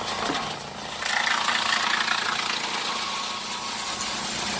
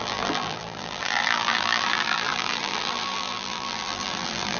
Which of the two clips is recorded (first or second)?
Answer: first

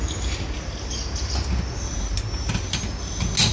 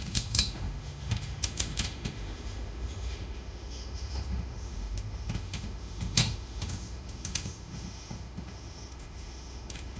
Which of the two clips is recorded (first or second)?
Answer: first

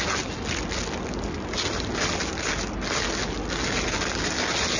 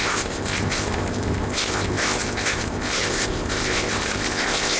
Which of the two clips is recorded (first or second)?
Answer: first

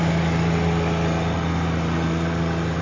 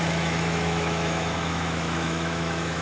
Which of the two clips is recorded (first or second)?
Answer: first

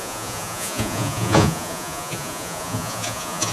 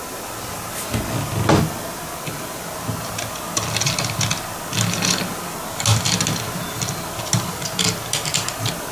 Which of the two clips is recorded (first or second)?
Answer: second